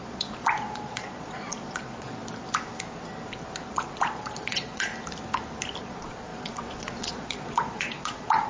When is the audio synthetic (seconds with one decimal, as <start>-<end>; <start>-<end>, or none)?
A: 0.0-2.1; 3.7-4.9; 5.8-8.5